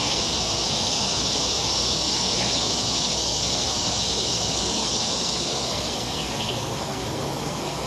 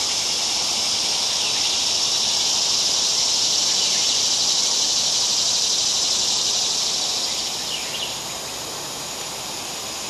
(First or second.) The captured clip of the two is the second